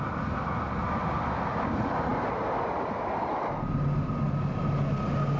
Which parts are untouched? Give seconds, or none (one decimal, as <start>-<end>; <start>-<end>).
0.0-5.4